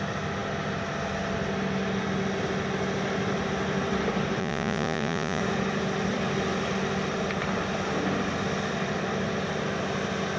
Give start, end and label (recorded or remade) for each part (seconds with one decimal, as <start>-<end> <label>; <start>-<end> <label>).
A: 0.0-4.4 recorded; 4.4-5.4 remade; 5.4-10.4 recorded